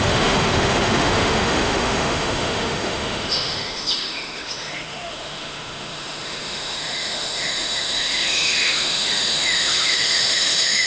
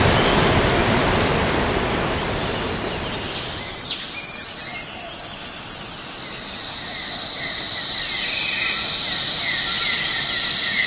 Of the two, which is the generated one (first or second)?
first